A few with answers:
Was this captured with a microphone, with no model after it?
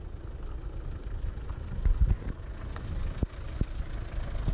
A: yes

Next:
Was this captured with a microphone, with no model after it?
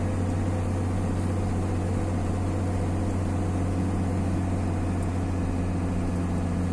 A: yes